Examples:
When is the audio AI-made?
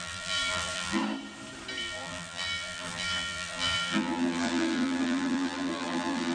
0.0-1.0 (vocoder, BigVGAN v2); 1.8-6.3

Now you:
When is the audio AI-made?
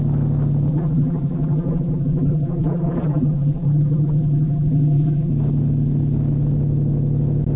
0.7-5.3 (vocoder, BigVGAN v2)